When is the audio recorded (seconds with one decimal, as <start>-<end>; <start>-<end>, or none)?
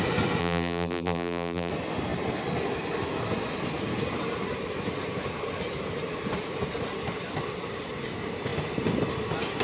0.0-0.4; 1.7-9.6